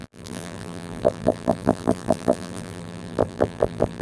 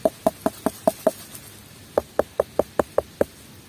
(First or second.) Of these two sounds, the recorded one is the second